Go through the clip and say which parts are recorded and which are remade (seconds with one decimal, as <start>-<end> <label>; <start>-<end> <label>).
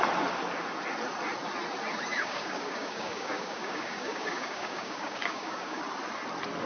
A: 0.0-2.1 recorded; 2.1-5.8 remade; 5.8-6.7 recorded